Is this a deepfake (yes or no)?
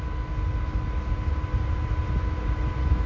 no